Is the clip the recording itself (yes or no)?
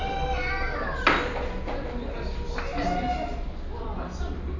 yes